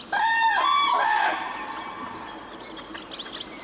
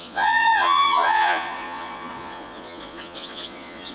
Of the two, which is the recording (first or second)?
first